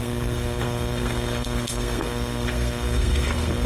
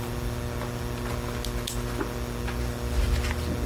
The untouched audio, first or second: second